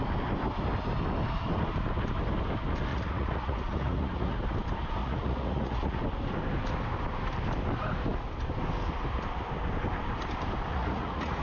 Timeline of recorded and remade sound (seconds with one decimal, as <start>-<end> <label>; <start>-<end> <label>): 0.0-2.9 recorded; 2.9-4.4 remade; 4.4-5.0 recorded; 5.0-6.0 remade; 6.0-10.7 recorded; 10.7-11.4 remade